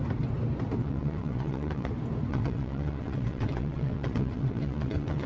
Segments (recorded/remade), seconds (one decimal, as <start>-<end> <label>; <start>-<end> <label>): 0.0-0.8 recorded; 0.8-1.9 remade; 1.9-2.3 recorded; 2.3-5.3 remade